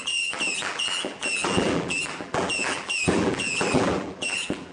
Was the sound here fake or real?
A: fake